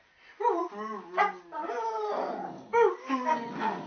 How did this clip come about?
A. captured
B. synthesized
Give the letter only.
A